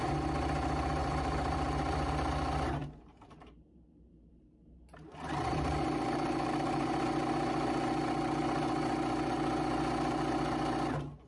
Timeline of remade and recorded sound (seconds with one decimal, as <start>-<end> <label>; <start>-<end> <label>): 0.0-1.0 recorded; 1.0-2.1 remade; 2.1-2.8 recorded; 2.8-7.0 remade; 7.0-11.3 recorded